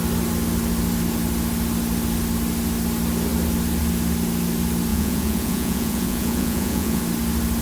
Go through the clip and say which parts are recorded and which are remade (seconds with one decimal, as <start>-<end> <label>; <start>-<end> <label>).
0.0-4.9 recorded; 4.9-7.0 remade; 7.0-7.6 recorded